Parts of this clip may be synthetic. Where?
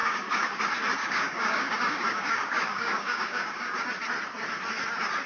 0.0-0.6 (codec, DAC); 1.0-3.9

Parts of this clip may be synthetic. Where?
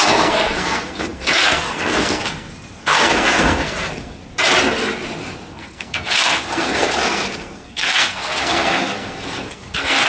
0.0-4.2 (codec, SNAC); 5.5-10.1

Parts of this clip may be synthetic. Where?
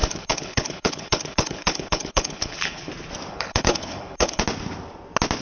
0.0-2.9 (codec, HILCodec); 3.3-4.4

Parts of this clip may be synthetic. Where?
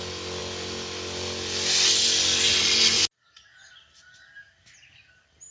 none